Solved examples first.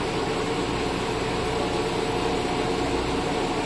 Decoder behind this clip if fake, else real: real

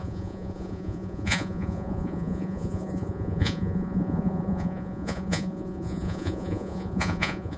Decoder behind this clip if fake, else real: fake, vocoder, Vocos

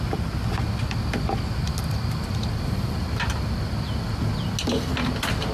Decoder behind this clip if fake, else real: real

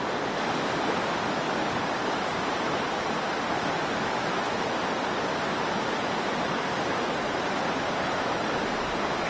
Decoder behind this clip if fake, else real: real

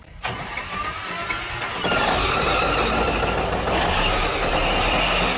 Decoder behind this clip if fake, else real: real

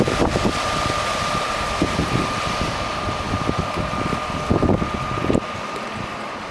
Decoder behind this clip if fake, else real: real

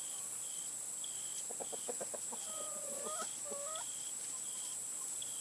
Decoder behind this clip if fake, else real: real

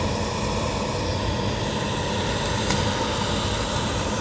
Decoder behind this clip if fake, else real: real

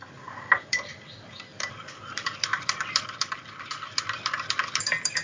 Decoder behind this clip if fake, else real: fake, vocoder, BigVGAN v2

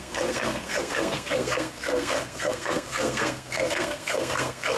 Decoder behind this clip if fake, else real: fake, codec, SNAC